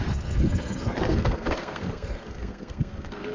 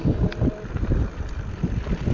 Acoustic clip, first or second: second